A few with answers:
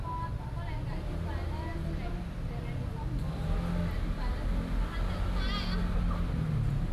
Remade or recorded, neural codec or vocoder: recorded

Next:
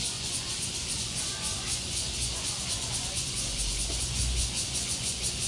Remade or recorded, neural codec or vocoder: remade, vocoder, Vocos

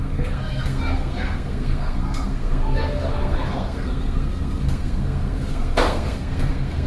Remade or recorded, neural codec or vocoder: remade, codec, SNAC